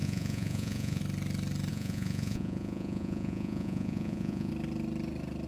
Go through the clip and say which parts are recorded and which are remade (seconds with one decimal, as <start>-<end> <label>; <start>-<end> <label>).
0.0-1.0 remade; 1.0-1.7 recorded; 1.7-4.5 remade; 4.5-5.5 recorded